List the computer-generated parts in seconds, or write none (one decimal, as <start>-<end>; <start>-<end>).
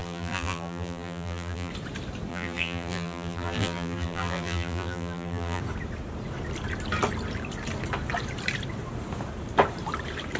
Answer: 0.0-1.7; 2.3-5.6